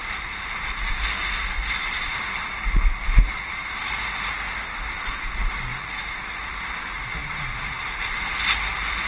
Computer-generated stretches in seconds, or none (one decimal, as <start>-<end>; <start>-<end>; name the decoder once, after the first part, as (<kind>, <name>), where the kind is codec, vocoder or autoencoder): 0.0-0.9 (vocoder, BigVGAN v2); 1.8-4.2; 7.2-8.4